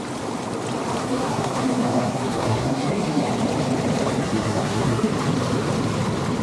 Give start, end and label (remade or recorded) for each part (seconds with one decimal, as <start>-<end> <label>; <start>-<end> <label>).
0.0-1.0 recorded; 1.0-3.3 remade; 3.3-4.2 recorded; 4.2-5.1 remade; 5.1-6.4 recorded